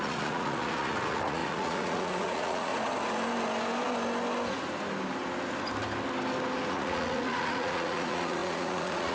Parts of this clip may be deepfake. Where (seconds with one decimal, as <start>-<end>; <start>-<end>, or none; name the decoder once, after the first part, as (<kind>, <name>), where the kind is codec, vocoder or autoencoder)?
0.0-2.7 (vocoder, Vocos); 6.7-9.1